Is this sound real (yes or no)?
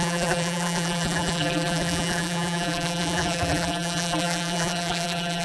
no